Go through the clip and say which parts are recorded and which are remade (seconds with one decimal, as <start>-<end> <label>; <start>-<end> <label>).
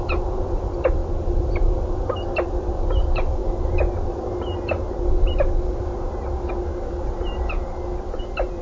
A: 0.0-8.6 recorded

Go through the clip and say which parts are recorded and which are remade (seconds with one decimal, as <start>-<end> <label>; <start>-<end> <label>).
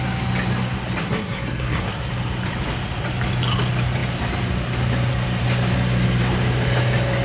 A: 0.0-1.0 recorded; 1.0-2.1 remade; 2.1-7.2 recorded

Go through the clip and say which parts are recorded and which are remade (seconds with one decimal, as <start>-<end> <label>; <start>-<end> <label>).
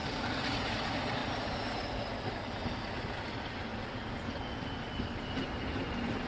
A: 0.0-6.3 recorded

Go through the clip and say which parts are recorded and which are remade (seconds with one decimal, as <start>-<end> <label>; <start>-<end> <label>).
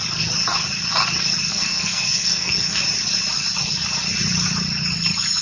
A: 0.0-1.5 recorded; 1.5-2.8 remade; 2.8-5.4 recorded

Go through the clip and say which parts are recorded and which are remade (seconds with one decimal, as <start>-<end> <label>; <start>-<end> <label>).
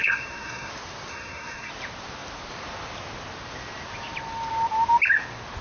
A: 0.0-0.7 remade; 0.7-1.1 recorded; 1.1-1.7 remade; 1.7-5.6 recorded